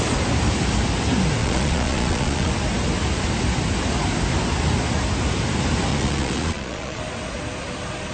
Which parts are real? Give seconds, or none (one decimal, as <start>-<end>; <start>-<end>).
0.0-1.4; 2.5-5.9; 7.0-8.1